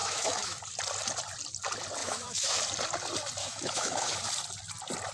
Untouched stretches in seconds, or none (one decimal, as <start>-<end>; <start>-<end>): 0.6-2.0; 2.6-3.4; 4.2-5.1